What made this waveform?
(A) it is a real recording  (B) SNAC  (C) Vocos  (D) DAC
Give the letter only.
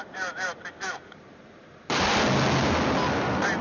A